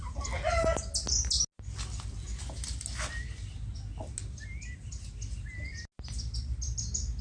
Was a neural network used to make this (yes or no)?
no